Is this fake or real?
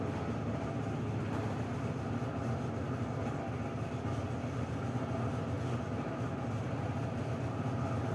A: real